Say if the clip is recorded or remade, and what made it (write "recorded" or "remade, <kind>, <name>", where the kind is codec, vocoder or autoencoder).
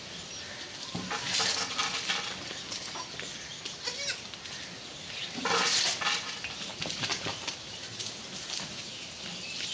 recorded